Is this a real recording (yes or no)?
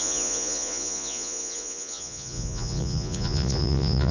no